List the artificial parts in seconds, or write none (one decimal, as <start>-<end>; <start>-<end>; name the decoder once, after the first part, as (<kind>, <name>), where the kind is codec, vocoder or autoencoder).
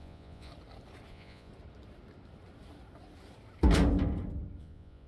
0.0-0.5 (vocoder, Vocos); 1.1-1.5; 4.6-5.1